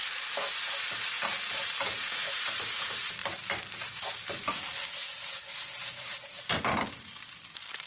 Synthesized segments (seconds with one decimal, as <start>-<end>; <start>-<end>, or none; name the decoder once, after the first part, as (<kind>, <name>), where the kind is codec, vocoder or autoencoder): 3.2-6.6 (vocoder, BigVGAN v2)